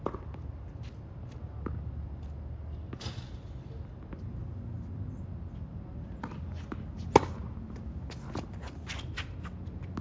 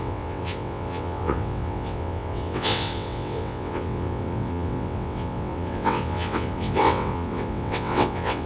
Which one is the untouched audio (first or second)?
first